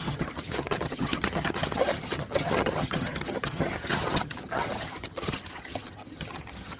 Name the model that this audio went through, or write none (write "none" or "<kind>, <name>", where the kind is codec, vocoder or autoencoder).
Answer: vocoder, HiFi-GAN